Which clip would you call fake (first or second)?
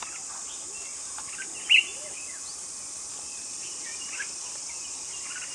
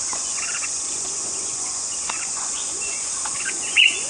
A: second